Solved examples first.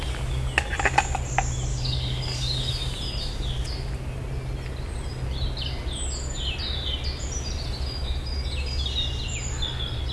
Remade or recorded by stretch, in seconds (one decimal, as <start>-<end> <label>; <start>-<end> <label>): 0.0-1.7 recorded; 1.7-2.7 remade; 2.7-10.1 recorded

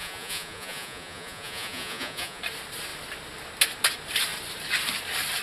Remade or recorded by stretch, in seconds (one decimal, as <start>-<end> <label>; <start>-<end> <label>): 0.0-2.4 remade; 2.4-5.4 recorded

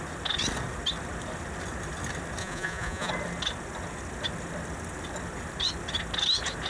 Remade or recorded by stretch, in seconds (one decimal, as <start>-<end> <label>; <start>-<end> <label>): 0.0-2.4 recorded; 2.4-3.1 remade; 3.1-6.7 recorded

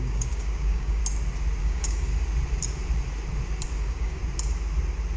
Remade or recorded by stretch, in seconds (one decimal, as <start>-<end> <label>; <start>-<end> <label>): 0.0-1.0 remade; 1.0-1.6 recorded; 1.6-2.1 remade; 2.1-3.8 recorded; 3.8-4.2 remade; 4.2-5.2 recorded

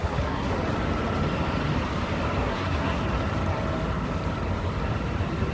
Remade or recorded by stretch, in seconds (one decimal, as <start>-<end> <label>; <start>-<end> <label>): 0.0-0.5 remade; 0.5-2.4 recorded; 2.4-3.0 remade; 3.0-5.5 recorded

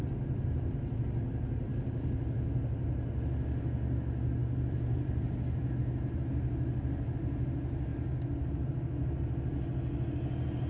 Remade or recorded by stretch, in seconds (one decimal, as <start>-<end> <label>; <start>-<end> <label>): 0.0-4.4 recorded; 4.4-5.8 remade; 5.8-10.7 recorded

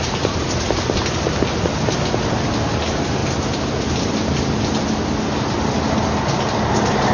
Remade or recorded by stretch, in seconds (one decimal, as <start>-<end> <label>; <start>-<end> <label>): 0.0-7.1 recorded